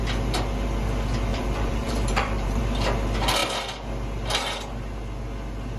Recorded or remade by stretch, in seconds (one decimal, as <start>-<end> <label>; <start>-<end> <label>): 0.0-1.3 recorded; 1.3-2.6 remade; 2.6-5.8 recorded